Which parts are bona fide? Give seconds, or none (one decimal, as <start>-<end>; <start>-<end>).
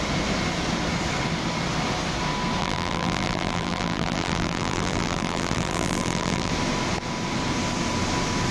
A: 0.0-2.6; 6.5-8.5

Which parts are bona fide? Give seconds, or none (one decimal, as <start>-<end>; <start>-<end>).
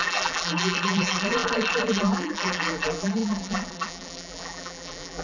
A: none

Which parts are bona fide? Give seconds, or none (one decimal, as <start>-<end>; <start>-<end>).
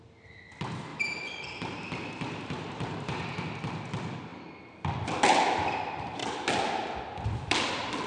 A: 0.0-0.9; 3.4-8.1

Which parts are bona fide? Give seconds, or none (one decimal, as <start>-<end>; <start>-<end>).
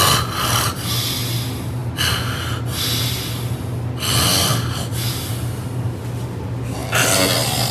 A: 0.0-7.7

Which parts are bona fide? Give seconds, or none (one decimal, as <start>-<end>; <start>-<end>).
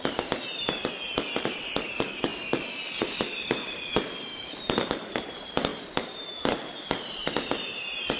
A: 2.3-3.0